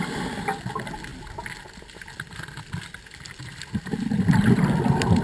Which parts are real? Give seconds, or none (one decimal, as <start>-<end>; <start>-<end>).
0.0-5.2